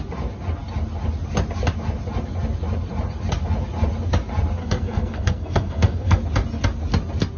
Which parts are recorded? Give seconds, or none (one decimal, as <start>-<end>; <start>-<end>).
0.0-4.6; 6.2-7.4